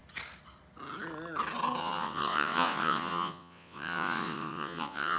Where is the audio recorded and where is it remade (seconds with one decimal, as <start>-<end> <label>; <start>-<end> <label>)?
0.0-1.8 recorded; 1.8-5.2 remade